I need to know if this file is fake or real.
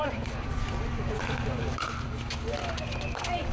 fake